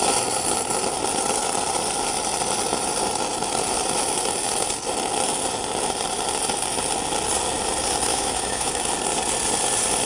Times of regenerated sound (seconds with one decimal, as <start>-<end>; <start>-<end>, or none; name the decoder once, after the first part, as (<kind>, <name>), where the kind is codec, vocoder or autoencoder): 8.1-8.8 (autoencoder, DAC-VAE)